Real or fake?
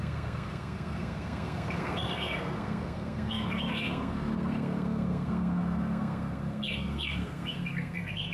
fake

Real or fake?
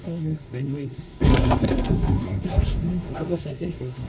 fake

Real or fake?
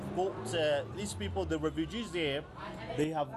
real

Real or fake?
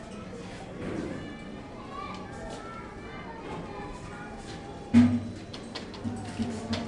real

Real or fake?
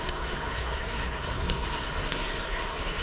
fake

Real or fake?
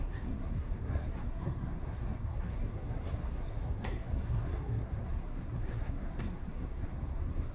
fake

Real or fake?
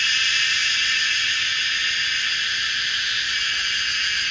real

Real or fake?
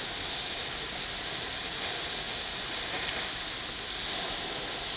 real